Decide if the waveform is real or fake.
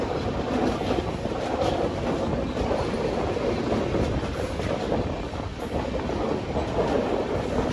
real